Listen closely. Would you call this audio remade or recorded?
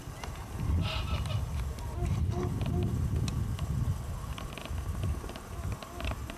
recorded